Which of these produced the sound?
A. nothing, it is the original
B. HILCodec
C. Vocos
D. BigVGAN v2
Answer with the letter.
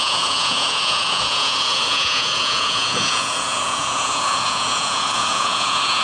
C